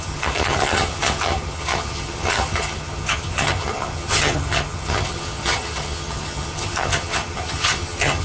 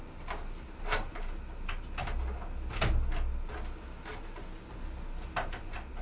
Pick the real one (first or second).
second